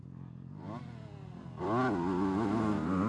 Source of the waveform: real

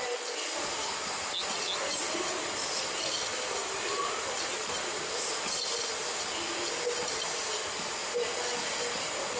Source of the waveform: real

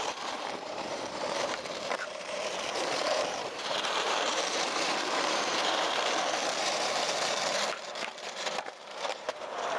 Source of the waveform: fake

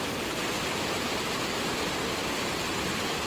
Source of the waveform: fake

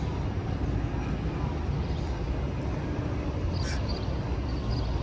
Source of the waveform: real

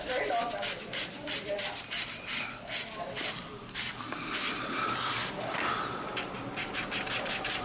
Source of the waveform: fake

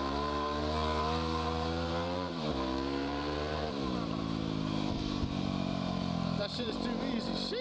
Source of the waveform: fake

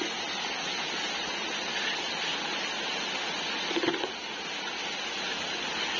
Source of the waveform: real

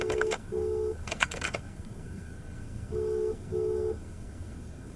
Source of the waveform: fake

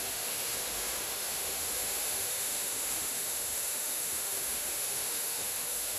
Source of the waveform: fake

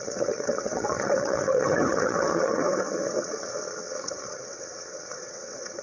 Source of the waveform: fake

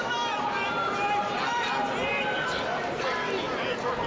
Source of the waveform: real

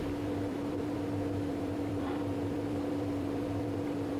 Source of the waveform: fake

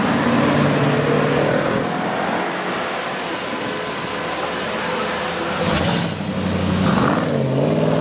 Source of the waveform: real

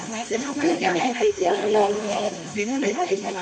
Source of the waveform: fake